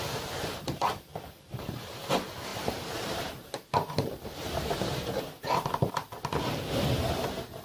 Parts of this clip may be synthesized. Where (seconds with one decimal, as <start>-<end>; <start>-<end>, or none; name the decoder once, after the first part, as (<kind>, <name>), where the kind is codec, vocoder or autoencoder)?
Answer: 1.1-1.8 (vocoder, BigVGAN v2); 2.5-5.9